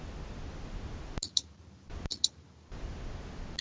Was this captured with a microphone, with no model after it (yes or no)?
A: yes